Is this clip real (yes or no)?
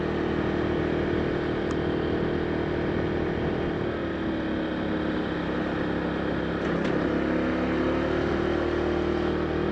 yes